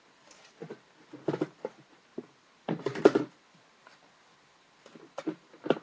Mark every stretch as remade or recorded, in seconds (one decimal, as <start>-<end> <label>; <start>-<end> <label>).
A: 0.0-5.8 recorded